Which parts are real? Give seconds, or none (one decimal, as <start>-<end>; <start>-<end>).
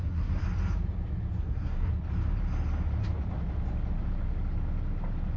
0.4-1.4; 1.9-5.4